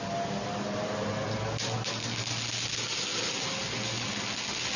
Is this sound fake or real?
real